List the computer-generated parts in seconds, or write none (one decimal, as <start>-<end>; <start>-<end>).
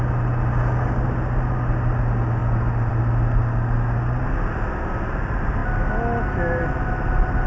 none